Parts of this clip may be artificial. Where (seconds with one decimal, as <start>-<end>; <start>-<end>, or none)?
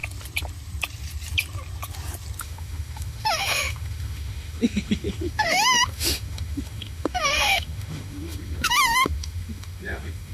2.4-10.3